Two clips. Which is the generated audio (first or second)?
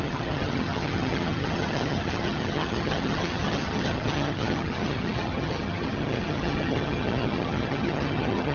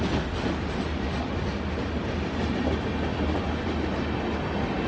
first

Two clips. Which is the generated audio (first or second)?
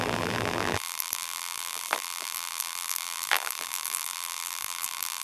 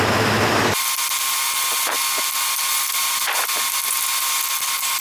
first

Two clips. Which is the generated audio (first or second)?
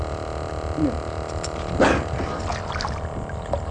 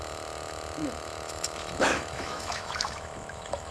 second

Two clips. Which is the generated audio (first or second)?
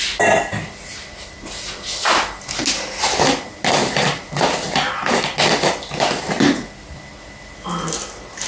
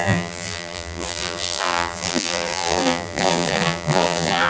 second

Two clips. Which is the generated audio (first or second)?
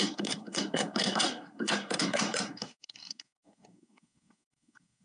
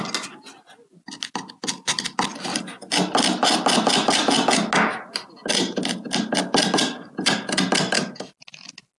first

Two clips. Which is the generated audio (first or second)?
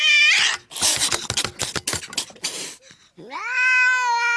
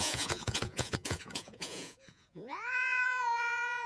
second